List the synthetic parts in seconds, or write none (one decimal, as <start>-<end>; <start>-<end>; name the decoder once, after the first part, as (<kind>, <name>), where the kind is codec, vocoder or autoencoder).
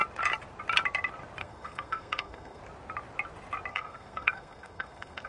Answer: 1.4-2.6 (codec, SNAC); 3.7-5.3